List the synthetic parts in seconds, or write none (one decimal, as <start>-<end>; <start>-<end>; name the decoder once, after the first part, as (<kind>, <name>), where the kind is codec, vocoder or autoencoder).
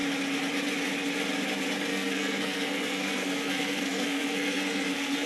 1.9-5.3 (codec, SNAC)